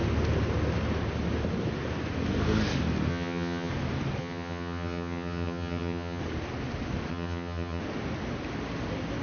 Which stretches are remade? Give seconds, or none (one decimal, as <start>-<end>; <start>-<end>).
3.1-3.7; 4.2-6.2; 7.1-7.8